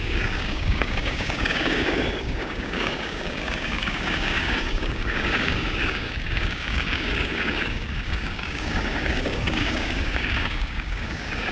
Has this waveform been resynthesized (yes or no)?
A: yes